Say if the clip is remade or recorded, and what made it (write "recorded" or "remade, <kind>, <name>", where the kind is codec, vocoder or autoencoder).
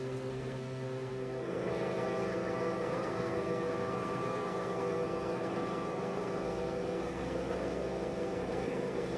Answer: remade, codec, SNAC